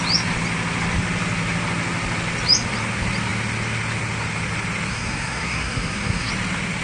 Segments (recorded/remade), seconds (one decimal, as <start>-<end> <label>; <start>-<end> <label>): 0.0-4.9 recorded; 4.9-6.3 remade; 6.3-6.8 recorded